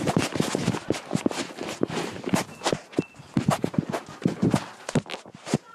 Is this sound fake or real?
real